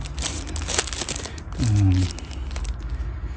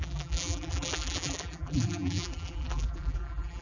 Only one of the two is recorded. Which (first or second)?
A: first